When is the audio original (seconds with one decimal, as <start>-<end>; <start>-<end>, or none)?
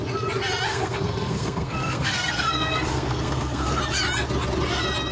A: 0.0-0.7; 3.8-5.1